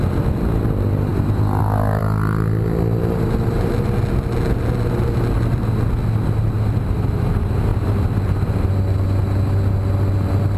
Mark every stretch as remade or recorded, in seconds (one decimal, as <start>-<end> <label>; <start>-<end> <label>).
0.0-2.0 recorded; 2.0-3.0 remade; 3.0-10.6 recorded